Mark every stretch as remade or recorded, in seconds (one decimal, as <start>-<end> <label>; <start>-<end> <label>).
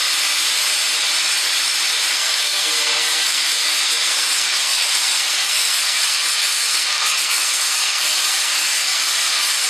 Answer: 0.0-2.1 recorded; 2.1-9.7 remade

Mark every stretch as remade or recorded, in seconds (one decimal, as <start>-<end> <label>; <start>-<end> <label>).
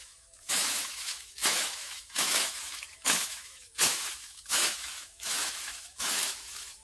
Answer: 0.0-6.8 remade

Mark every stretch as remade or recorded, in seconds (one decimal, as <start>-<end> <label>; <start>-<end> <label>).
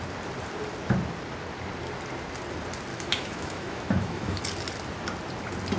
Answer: 0.0-2.9 recorded; 2.9-4.4 remade; 4.4-5.8 recorded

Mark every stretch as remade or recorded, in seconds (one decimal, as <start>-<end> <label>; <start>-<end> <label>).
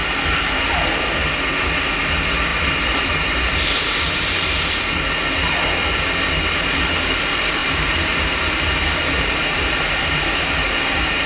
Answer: 0.0-0.7 remade; 0.7-2.5 recorded; 2.5-5.0 remade; 5.0-7.6 recorded; 7.6-10.7 remade; 10.7-11.3 recorded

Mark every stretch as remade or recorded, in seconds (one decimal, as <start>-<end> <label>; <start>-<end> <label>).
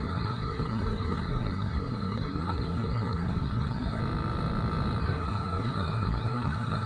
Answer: 0.0-4.0 remade; 4.0-5.0 recorded; 5.0-6.9 remade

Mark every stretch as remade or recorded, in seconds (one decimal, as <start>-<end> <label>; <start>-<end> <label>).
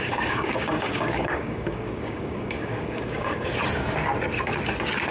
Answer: 0.0-3.5 remade; 3.5-5.1 recorded